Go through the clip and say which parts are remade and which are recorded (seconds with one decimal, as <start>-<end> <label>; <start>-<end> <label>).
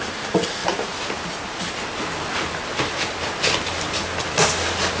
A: 0.0-5.0 recorded